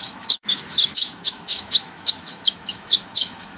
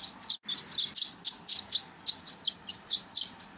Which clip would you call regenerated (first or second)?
first